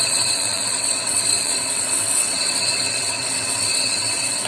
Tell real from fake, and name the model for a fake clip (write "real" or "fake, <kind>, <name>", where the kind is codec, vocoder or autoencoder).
fake, vocoder, WaveNeXt